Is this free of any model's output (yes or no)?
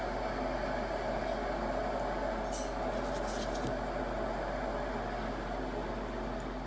yes